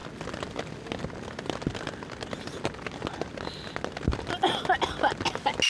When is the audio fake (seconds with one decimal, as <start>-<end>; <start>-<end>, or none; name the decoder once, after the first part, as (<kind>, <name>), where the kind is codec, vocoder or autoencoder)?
none